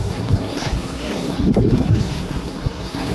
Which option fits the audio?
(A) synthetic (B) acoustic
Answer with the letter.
A